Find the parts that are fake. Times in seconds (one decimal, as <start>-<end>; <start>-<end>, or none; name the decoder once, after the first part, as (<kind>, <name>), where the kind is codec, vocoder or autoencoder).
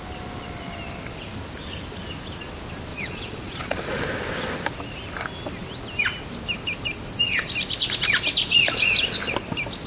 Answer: 2.9-4.0 (vocoder, Vocos)